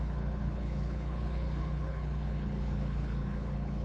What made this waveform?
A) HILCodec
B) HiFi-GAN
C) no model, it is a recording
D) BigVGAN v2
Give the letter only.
A